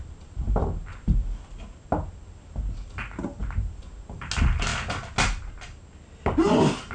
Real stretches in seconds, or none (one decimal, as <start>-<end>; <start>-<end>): 0.0-6.9